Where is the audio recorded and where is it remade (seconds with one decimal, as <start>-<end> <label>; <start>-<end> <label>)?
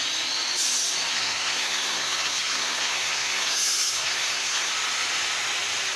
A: 0.0-1.1 recorded; 1.1-4.7 remade; 4.7-6.0 recorded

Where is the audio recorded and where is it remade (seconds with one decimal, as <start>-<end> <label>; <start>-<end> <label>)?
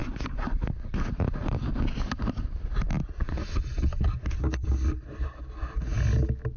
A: 0.0-6.6 recorded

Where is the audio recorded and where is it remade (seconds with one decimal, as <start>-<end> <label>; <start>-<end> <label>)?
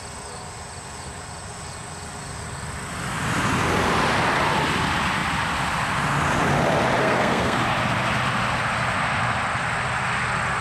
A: 0.0-7.0 recorded; 7.0-7.6 remade; 7.6-10.6 recorded